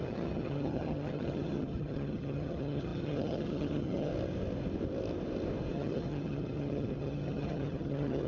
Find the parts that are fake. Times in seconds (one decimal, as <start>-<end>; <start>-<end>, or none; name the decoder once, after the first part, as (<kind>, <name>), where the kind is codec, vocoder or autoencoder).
0.0-4.1 (vocoder, HiFi-GAN); 5.7-8.3